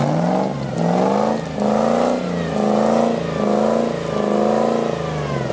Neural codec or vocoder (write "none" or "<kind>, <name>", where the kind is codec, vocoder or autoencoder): none